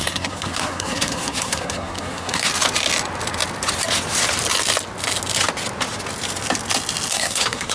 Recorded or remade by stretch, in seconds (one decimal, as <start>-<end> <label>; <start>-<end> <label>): 0.0-2.5 remade; 2.5-7.1 recorded; 7.1-7.7 remade